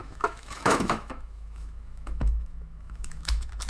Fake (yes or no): yes